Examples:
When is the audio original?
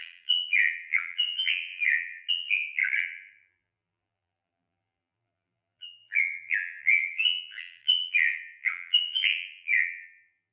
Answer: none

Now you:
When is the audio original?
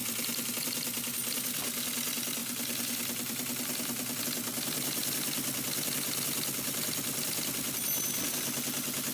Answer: 0.5-2.4; 4.2-9.1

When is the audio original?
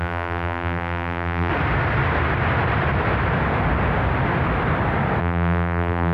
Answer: 1.5-5.2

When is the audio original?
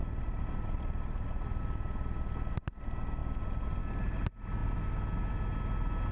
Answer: 1.6-6.1